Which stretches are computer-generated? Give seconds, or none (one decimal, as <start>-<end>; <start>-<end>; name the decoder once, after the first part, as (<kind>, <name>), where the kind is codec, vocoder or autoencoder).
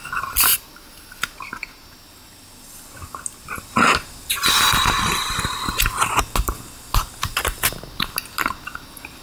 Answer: none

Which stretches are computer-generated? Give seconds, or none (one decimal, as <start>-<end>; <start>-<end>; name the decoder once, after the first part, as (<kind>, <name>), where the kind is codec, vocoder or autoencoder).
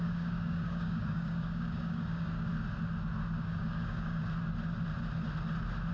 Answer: 0.0-2.5 (codec, DAC); 3.4-4.2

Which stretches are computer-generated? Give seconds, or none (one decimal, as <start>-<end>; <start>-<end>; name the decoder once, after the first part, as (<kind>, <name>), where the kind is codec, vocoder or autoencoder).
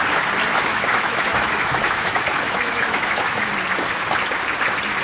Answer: 0.5-3.5 (autoencoder, DAC-VAE)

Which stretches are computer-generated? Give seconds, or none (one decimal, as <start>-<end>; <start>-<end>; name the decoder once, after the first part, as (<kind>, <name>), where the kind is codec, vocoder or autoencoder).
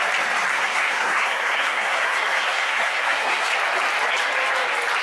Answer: 0.5-3.5 (codec, SNAC)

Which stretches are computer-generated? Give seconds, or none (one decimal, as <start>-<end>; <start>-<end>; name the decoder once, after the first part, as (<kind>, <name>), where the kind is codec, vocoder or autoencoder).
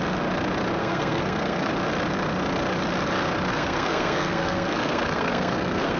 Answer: 0.8-1.7 (codec, SNAC); 3.5-6.0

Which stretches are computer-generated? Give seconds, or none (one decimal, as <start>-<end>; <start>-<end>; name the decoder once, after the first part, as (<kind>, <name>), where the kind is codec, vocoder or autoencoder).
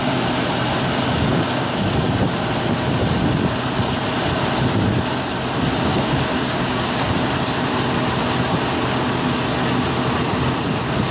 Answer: 1.3-2.1 (codec, DAC); 5.9-7.0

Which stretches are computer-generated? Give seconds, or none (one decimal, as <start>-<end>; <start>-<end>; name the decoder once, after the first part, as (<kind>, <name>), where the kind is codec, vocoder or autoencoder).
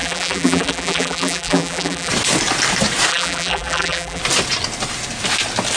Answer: 0.0-2.1 (vocoder, BigVGAN v2); 3.1-4.2